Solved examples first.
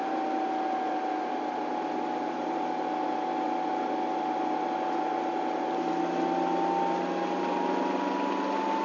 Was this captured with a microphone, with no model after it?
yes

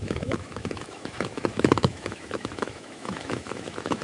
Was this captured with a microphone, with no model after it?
no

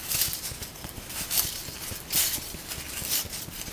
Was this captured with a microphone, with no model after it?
yes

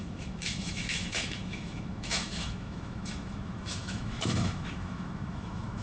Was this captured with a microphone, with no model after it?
no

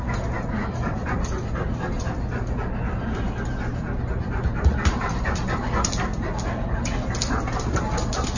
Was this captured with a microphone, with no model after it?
yes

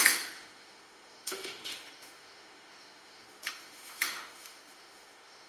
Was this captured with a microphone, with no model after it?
no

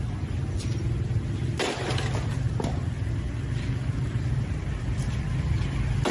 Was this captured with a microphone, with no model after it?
yes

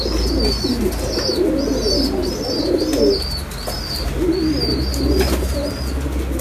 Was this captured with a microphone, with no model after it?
yes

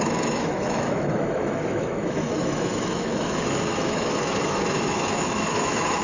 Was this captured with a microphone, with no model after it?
no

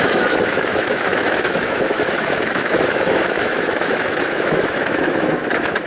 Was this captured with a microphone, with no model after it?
no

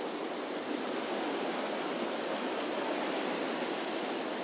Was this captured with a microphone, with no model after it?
yes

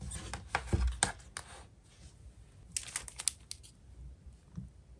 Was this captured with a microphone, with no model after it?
yes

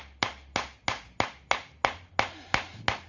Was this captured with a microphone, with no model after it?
yes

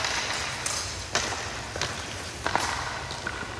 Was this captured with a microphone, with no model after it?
yes